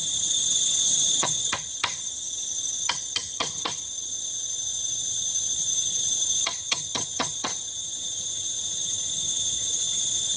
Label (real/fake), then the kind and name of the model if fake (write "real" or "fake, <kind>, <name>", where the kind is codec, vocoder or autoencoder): fake, vocoder, HiFi-GAN